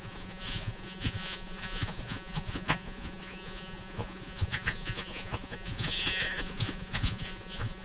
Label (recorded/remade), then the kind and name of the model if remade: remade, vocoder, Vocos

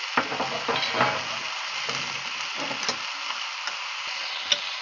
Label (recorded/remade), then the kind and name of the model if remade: recorded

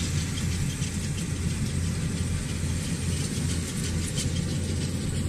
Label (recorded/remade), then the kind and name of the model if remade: recorded